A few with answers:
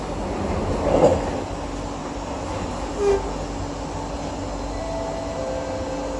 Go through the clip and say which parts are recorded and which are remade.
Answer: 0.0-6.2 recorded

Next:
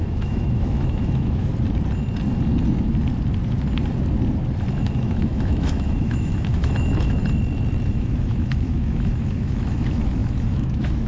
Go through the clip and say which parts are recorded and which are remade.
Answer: 0.0-1.5 remade; 1.5-4.8 recorded; 4.8-7.2 remade; 7.2-7.9 recorded; 7.9-11.1 remade